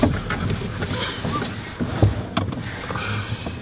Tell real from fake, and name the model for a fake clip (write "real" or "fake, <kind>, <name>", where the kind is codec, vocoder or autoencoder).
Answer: real